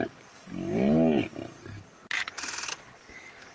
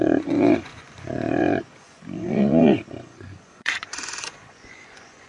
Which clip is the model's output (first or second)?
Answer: second